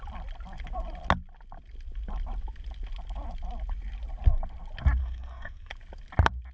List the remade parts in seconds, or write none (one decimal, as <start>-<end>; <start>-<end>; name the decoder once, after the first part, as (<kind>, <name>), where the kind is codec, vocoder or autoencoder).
5.0-5.7 (codec, SNAC)